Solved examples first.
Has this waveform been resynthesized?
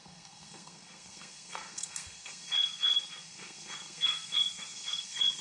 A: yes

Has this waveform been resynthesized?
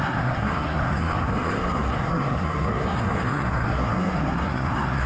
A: yes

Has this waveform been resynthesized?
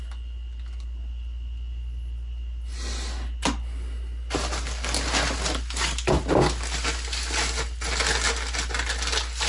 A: no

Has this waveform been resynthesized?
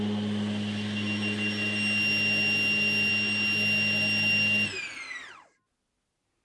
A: no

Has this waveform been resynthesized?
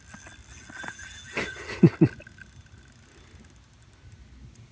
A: no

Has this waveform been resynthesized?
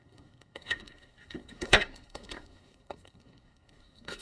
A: yes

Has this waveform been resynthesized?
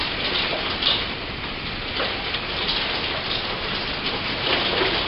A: no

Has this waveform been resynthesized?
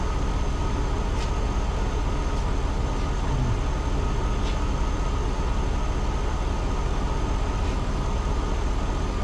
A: no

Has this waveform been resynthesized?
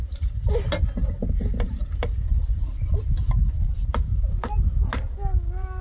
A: no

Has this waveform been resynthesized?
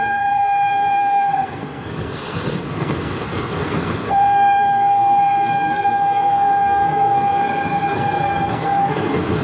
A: yes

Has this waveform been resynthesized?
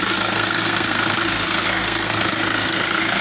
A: yes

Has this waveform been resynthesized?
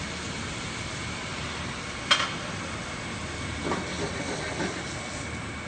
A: no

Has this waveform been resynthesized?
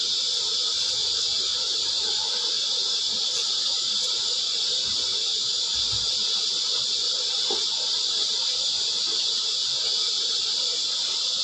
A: no